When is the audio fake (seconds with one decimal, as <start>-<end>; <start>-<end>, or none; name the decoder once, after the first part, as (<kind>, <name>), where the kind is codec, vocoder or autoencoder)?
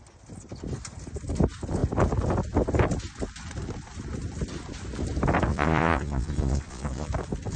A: 5.5-7.1 (vocoder, Vocos)